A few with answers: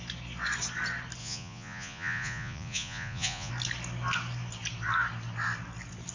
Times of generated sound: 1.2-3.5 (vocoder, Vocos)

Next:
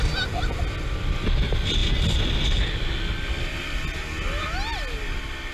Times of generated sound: none

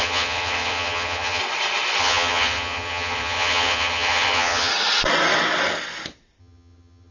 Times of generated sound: 0.0-1.4 (vocoder, HiFi-GAN); 2.0-4.7; 6.4-7.1

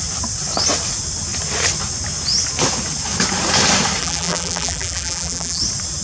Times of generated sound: 4.0-5.6 (vocoder, BigVGAN v2)

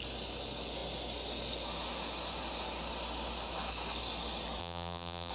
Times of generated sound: 4.6-5.3 (vocoder, BigVGAN v2)